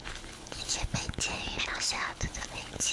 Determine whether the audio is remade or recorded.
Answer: remade